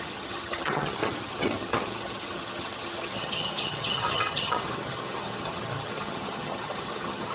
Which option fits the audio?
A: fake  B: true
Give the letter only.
A